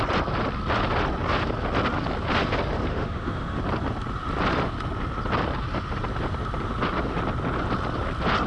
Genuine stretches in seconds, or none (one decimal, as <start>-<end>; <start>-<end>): 0.0-2.9; 3.6-8.5